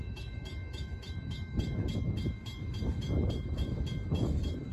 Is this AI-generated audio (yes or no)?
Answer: yes